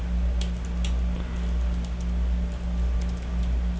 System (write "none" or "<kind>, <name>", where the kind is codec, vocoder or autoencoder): none